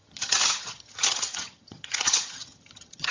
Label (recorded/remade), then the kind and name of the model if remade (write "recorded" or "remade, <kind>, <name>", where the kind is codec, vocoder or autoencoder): remade, vocoder, HiFi-GAN